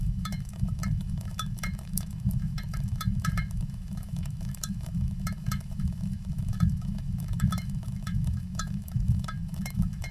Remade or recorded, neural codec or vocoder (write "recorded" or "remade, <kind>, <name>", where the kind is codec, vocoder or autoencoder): remade, autoencoder, DAC-VAE